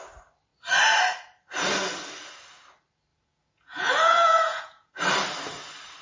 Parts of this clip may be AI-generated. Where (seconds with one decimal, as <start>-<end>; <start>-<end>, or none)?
3.1-4.9